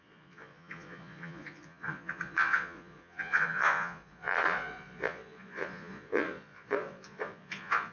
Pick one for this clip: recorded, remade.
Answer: remade